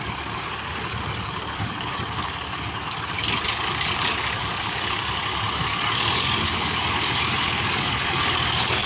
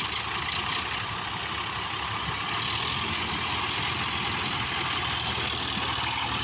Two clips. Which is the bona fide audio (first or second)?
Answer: second